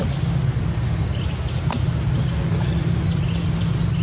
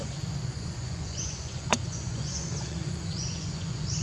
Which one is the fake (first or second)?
second